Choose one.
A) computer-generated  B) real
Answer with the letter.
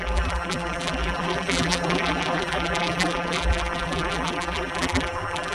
A